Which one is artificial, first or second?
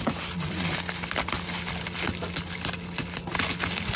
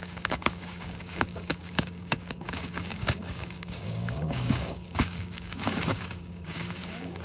second